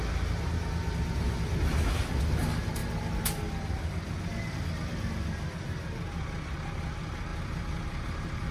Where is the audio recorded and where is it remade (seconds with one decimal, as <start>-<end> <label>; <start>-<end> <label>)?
0.0-7.3 recorded; 7.3-8.5 remade